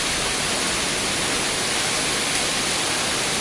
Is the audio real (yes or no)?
yes